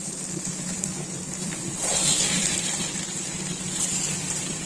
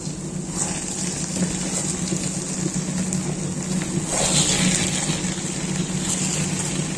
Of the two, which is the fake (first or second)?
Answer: first